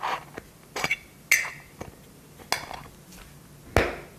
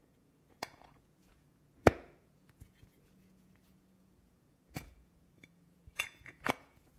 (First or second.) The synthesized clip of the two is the second